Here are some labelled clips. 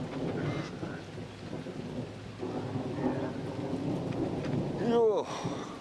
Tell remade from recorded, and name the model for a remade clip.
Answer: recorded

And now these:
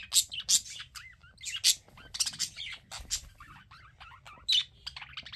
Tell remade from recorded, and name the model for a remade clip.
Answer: recorded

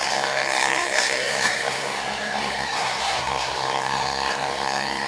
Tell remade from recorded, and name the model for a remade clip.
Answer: remade, codec, SNAC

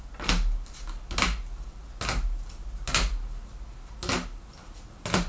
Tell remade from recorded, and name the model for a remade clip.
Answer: recorded